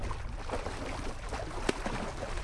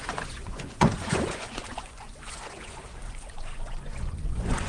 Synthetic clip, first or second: second